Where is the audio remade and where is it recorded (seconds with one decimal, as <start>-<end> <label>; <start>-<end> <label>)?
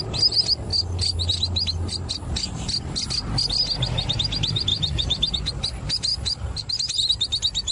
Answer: 0.0-7.7 recorded